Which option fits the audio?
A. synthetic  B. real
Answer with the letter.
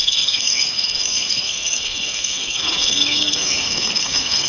A